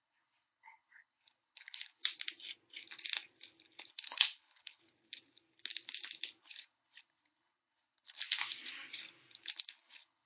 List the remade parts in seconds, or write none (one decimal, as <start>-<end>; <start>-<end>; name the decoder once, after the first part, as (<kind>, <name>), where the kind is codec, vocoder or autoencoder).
0.0-2.0 (codec, HILCodec); 3.9-4.8; 6.4-8.4; 9.5-10.3